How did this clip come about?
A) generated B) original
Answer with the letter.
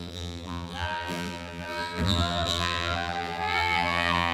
A